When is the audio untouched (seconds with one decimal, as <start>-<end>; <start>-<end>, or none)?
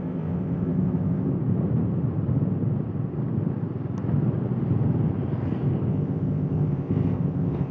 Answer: 1.3-5.9